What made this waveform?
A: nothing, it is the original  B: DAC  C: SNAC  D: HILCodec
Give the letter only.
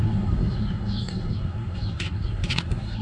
C